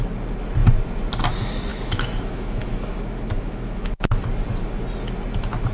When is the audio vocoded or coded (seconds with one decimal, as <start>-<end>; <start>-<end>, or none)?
1.7-4.2